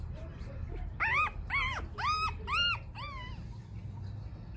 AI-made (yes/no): no